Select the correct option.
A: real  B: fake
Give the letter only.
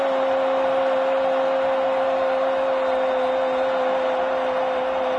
A